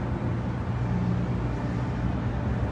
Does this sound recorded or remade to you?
recorded